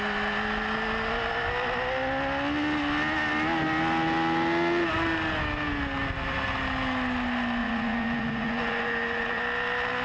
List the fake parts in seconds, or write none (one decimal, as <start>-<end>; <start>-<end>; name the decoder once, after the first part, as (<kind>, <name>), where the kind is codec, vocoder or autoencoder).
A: 7.6-9.4 (vocoder, Vocos)